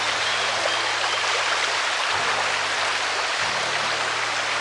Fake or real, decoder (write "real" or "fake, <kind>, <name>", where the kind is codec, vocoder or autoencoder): real